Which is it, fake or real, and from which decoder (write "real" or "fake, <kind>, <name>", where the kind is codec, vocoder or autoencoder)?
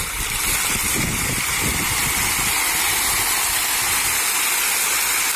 real